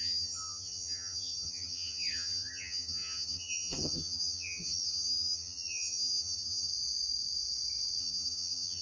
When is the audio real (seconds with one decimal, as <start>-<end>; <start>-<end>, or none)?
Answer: 6.7-8.0